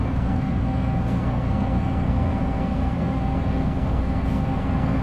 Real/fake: fake